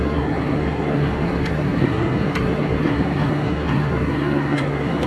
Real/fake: fake